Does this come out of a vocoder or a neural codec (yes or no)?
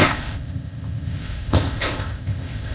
yes